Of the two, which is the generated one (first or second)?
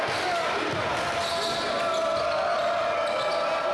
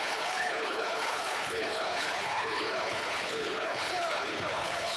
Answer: second